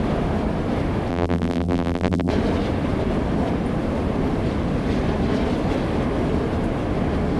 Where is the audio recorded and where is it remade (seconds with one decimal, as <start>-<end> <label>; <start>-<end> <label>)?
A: 0.0-1.1 recorded; 1.1-2.3 remade; 2.3-7.4 recorded